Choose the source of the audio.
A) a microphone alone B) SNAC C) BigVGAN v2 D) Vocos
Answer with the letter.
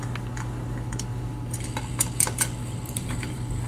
C